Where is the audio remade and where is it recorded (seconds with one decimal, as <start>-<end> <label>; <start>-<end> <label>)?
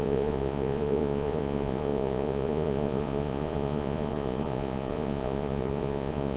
0.0-6.4 remade